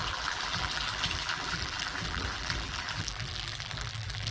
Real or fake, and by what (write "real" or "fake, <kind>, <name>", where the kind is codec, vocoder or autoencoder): fake, vocoder, BigVGAN v2